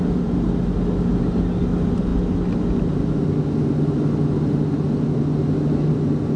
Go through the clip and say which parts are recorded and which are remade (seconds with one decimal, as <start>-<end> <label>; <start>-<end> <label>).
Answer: 0.0-6.4 recorded